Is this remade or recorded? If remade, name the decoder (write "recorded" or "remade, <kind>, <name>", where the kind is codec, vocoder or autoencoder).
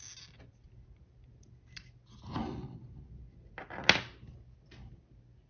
recorded